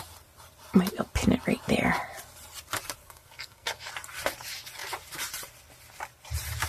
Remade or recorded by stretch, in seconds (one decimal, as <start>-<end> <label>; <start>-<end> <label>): 0.0-3.0 recorded; 3.0-3.9 remade; 3.9-6.7 recorded